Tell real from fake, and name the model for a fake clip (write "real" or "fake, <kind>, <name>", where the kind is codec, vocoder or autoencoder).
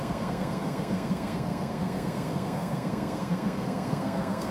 fake, codec, SNAC